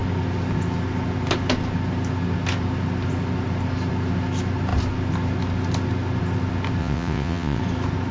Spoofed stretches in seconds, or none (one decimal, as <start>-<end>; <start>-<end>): 6.8-7.6